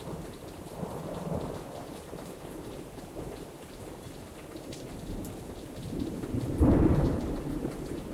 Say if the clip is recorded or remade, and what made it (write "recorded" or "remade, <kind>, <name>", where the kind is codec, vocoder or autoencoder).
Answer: remade, vocoder, BigVGAN v2